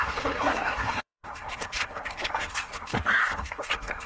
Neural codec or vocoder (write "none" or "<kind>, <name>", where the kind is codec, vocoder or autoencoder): codec, SNAC